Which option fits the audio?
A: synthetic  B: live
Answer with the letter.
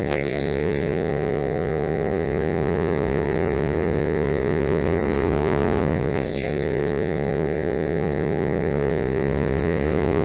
A